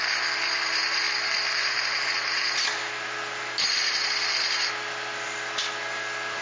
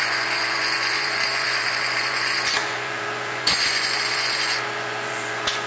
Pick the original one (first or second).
first